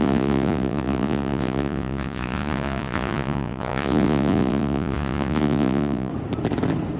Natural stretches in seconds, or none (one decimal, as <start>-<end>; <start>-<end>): 6.1-7.0